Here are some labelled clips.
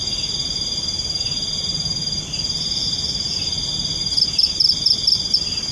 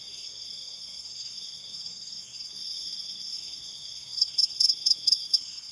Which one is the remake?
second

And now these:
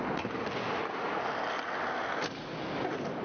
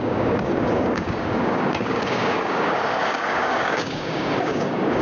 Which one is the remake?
second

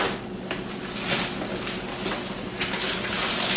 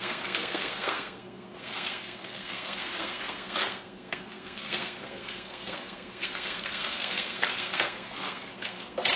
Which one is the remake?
second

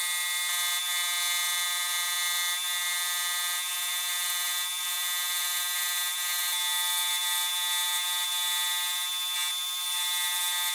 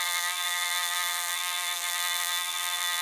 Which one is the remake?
second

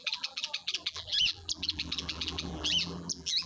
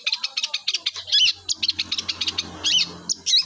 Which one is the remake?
first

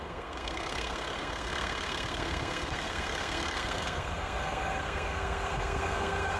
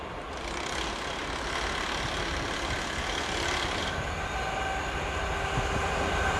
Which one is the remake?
first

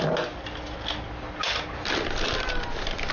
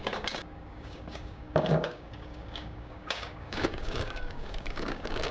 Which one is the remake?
second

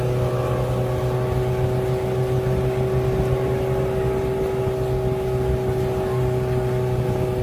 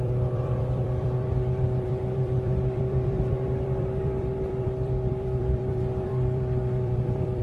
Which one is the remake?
second